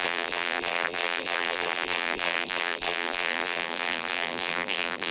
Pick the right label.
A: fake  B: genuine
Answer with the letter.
A